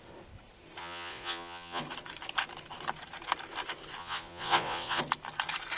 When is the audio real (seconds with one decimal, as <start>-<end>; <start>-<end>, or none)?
0.0-0.8; 1.8-4.0; 5.0-5.8